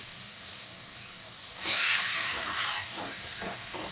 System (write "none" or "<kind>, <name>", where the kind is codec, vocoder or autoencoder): codec, DAC